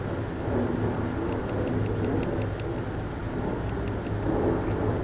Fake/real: real